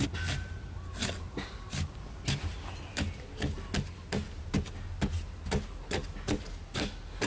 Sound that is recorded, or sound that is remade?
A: recorded